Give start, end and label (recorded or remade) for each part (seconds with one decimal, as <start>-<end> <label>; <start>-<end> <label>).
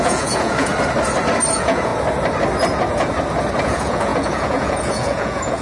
0.0-0.7 remade; 0.7-1.5 recorded; 1.5-1.9 remade; 1.9-3.6 recorded; 3.6-5.6 remade